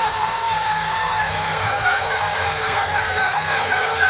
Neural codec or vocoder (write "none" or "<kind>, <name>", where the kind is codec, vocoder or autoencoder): codec, SNAC